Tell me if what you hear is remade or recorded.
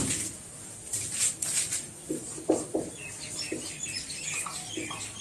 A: recorded